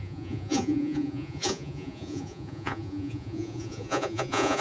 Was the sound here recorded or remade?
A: remade